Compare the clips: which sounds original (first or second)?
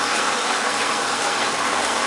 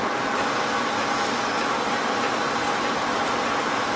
second